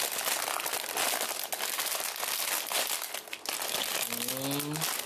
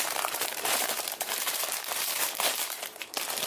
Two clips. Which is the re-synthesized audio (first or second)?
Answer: second